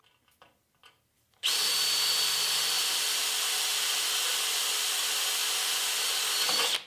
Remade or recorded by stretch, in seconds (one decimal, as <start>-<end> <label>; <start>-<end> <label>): 0.0-6.9 recorded